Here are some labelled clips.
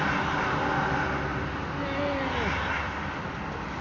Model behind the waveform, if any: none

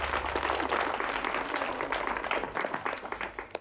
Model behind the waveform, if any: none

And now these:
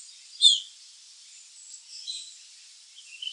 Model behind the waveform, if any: none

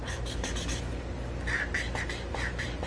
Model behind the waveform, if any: none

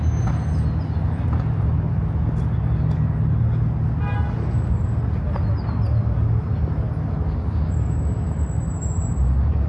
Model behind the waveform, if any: none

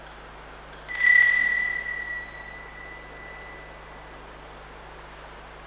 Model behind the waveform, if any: none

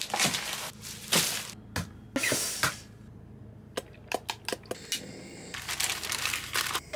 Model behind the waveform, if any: none